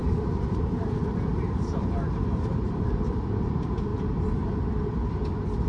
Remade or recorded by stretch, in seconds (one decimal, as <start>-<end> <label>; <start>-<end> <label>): 0.0-3.9 remade; 3.9-5.7 recorded